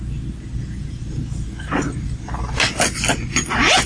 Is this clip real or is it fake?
real